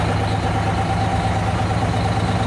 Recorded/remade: recorded